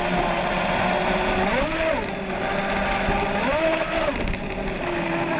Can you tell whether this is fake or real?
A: real